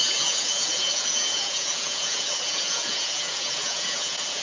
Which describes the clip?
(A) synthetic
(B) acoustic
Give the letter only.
A